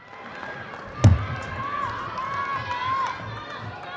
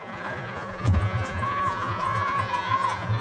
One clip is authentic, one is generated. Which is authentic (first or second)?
first